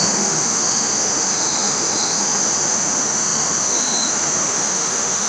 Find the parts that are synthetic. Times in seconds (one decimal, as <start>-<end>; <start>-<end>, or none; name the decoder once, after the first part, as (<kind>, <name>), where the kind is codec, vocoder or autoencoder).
0.0-5.3 (autoencoder, DAC-VAE)